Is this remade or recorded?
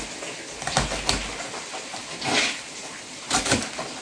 recorded